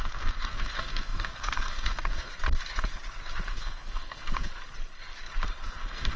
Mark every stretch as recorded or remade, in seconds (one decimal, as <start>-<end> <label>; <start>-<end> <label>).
0.0-2.3 remade; 2.3-3.5 recorded; 3.5-4.5 remade; 4.5-5.6 recorded; 5.6-6.2 remade